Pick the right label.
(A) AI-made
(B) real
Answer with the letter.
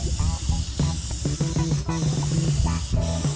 B